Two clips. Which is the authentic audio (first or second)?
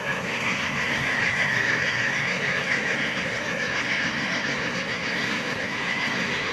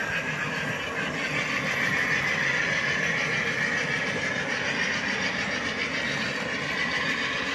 second